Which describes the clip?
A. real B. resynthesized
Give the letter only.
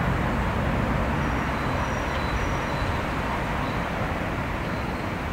A